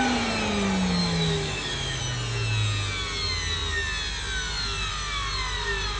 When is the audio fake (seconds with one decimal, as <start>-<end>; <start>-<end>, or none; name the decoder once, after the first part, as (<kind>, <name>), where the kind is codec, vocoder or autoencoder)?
1.0-2.0 (autoencoder, DAC-VAE)